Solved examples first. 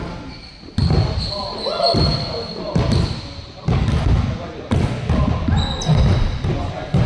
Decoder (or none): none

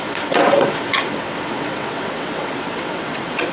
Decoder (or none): vocoder, WaveNeXt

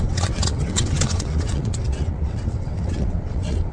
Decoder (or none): vocoder, WaveNeXt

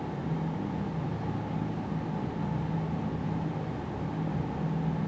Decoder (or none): none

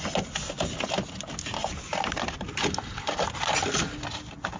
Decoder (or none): none